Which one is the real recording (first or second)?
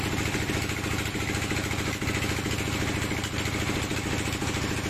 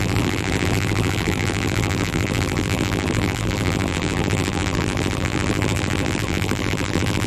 first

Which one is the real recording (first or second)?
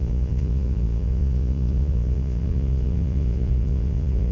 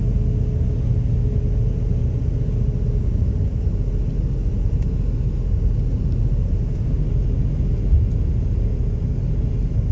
second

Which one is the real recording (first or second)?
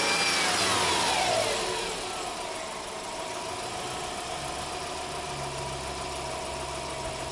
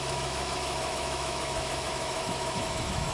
first